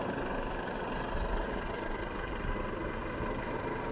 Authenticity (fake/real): real